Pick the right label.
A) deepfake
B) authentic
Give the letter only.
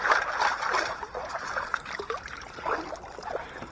B